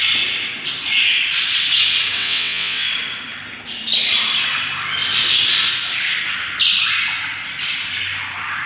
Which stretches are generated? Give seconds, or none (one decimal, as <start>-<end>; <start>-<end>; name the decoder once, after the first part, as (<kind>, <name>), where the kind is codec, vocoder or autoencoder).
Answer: 2.2-2.9 (vocoder, WaveNeXt)